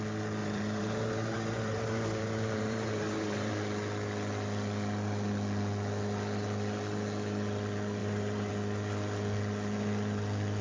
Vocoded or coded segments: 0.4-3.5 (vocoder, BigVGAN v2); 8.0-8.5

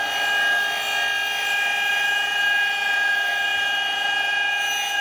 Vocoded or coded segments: 1.9-5.0 (vocoder, BigVGAN v2)

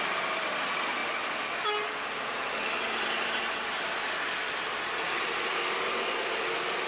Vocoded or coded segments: none

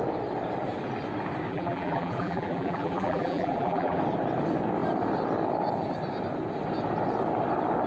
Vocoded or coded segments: 1.5-4.0 (vocoder, BigVGAN v2)

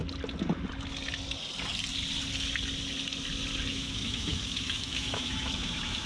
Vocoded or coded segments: 3.7-6.1 (autoencoder, DAC-VAE)

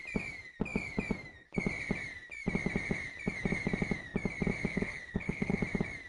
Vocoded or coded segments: 4.7-5.6 (codec, HILCodec)

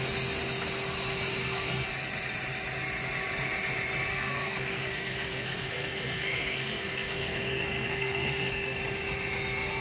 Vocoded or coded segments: 1.4-1.9 (codec, SNAC); 4.1-8.8

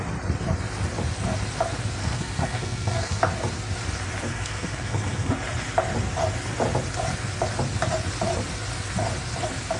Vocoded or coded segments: 2.0-3.2 (codec, SNAC); 4.3-5.3